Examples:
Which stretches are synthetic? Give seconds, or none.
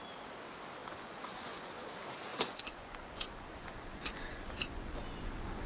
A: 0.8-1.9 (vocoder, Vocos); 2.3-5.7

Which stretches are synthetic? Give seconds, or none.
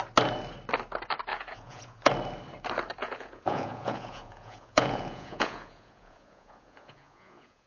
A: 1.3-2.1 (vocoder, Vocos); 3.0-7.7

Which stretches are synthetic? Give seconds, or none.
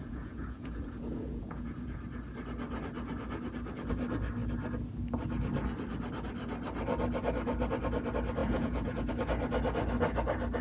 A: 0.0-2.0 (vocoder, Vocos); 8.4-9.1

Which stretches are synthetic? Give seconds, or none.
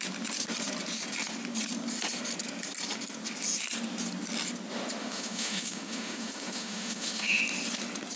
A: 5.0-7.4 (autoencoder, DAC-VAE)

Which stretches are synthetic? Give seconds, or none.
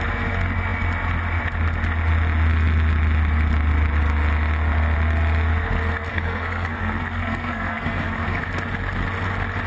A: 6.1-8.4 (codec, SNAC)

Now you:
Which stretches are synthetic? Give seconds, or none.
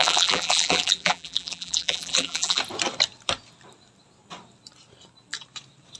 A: 0.0-2.6 (vocoder, BigVGAN v2)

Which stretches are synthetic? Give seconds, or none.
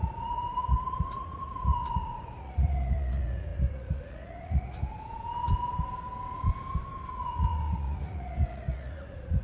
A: 0.0-5.1 (vocoder, Vocos); 7.1-9.4